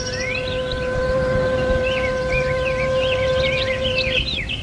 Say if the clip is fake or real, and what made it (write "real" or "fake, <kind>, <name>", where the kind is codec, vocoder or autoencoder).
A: real